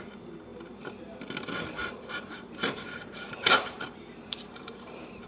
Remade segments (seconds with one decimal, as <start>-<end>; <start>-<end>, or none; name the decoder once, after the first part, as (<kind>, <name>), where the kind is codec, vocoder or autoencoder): 1.8-5.3 (vocoder, BigVGAN v2)